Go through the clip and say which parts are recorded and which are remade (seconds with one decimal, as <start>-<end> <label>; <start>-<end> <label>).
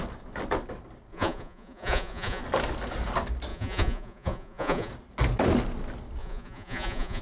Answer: 0.0-1.1 recorded; 1.1-2.4 remade; 2.4-3.5 recorded; 3.5-4.9 remade; 4.9-6.2 recorded; 6.2-7.2 remade